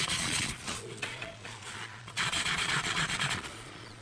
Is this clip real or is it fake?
fake